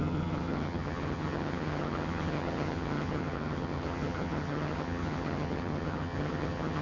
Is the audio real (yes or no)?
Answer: no